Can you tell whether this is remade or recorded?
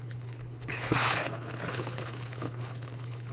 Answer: remade